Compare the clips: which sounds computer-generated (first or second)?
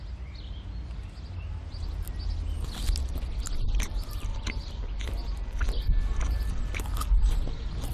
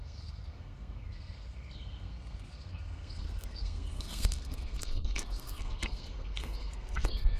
second